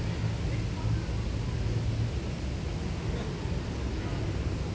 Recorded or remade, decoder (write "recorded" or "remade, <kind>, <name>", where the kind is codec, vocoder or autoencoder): recorded